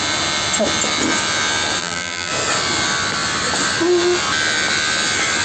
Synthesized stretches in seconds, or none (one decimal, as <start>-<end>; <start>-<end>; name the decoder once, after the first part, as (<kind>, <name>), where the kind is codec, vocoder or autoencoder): 1.8-2.3 (vocoder, BigVGAN v2)